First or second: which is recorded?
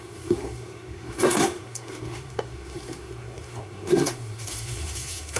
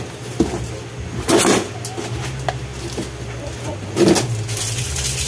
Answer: second